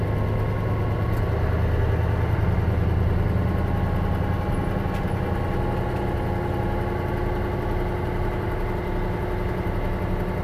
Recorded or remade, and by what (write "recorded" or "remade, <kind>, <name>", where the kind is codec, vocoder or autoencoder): recorded